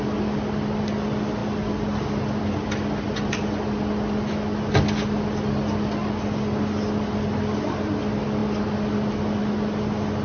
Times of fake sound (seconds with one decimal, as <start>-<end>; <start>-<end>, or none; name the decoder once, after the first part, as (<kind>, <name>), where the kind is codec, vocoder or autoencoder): none